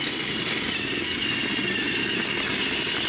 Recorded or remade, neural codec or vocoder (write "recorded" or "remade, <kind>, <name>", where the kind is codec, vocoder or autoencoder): recorded